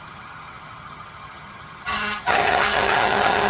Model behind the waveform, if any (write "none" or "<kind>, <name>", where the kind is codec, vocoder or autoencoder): vocoder, HiFi-GAN